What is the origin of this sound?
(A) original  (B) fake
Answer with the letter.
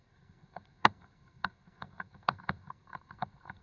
B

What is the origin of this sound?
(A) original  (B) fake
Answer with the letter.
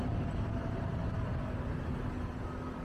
A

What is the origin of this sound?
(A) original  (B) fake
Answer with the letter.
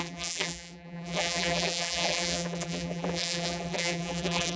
B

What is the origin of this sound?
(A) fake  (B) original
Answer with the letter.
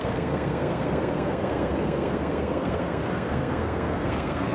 A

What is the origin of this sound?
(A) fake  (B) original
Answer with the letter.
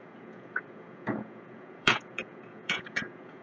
A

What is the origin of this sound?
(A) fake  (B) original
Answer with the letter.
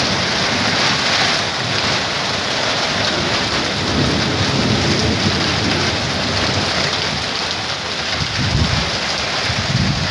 B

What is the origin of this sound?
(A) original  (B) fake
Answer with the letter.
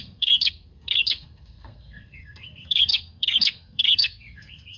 B